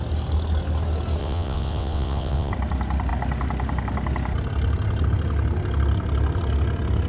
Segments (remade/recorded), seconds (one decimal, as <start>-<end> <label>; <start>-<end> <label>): 0.0-1.2 recorded; 1.2-2.5 remade; 2.5-7.1 recorded